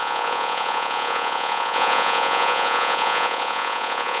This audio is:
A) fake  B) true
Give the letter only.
A